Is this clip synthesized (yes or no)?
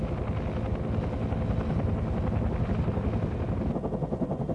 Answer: no